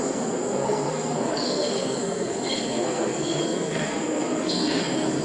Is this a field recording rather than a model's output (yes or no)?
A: no